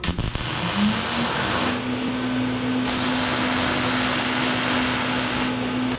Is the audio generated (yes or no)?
no